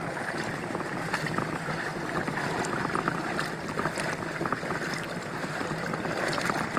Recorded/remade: recorded